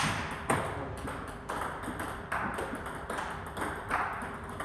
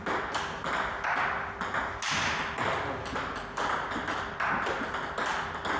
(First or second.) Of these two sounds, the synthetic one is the first